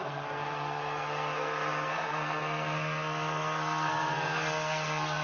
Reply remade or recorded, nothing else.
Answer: remade